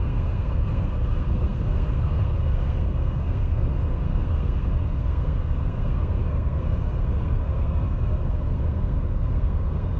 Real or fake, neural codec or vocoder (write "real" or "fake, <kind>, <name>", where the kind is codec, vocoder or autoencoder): fake, codec, SNAC